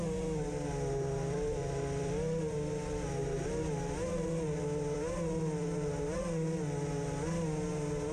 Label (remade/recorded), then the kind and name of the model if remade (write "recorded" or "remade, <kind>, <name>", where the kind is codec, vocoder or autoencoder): recorded